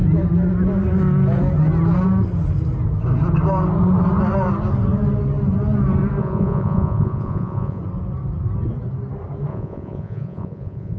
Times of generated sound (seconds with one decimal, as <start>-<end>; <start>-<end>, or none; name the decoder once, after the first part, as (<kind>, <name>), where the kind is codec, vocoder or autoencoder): 6.2-7.8 (vocoder, Vocos); 9.5-11.0

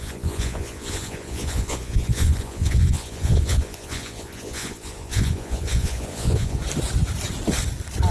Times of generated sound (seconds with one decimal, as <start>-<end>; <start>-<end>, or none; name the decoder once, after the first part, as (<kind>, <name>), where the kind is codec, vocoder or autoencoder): 0.0-6.6 (vocoder, Vocos)

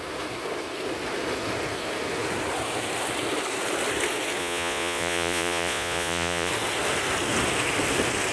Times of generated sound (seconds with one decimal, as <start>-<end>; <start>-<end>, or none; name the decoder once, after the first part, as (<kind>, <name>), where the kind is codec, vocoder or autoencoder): 4.4-6.5 (vocoder, Vocos)

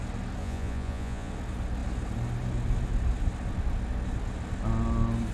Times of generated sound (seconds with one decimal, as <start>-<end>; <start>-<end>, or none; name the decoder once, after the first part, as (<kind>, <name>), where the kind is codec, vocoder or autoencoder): 0.4-1.3 (vocoder, Vocos)